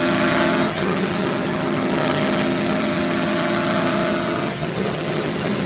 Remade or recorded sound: remade